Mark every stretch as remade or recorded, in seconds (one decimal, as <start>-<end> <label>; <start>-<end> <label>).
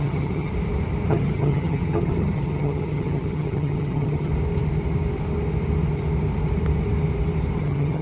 0.0-0.5 remade; 0.5-1.1 recorded; 1.1-4.3 remade; 4.3-7.6 recorded; 7.6-8.0 remade